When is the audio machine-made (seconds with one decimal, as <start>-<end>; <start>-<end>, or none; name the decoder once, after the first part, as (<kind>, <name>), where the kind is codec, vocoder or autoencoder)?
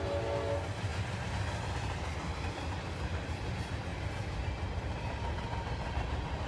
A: none